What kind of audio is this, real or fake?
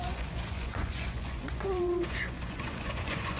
fake